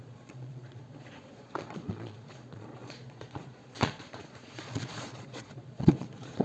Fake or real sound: fake